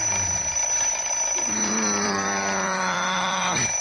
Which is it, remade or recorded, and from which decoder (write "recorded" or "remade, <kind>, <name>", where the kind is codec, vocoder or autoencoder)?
remade, vocoder, BigVGAN v2